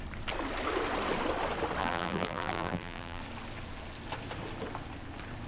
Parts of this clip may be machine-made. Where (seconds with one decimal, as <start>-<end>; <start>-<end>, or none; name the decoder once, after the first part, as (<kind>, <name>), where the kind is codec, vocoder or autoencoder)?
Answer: 1.8-3.2 (vocoder, BigVGAN v2)